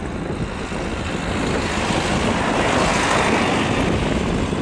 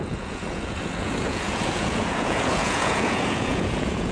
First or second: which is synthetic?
second